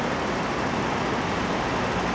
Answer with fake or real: real